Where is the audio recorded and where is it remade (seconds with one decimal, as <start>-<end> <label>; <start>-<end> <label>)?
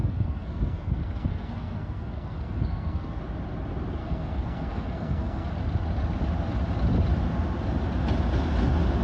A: 0.0-3.2 remade; 3.2-4.0 recorded; 4.0-5.5 remade; 5.5-9.0 recorded